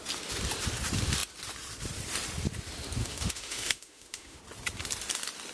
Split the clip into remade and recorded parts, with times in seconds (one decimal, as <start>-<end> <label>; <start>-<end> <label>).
0.0-3.0 recorded; 3.0-4.4 remade; 4.4-5.5 recorded